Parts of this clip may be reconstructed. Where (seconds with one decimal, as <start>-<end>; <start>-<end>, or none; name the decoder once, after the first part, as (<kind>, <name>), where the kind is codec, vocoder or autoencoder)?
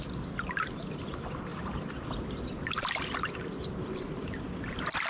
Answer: none